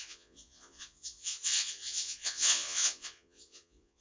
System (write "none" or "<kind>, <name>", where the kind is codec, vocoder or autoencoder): vocoder, Vocos